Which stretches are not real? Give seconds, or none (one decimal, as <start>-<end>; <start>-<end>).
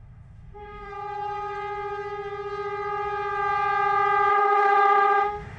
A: 0.0-0.9; 4.3-5.6